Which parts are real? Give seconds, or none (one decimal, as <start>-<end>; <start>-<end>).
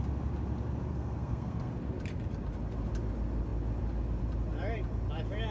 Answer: 0.0-0.9; 1.7-5.5